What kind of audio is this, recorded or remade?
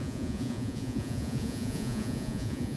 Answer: remade